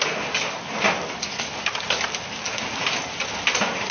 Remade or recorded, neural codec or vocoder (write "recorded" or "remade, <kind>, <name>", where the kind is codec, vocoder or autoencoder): recorded